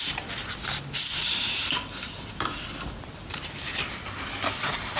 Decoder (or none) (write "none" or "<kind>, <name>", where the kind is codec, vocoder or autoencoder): none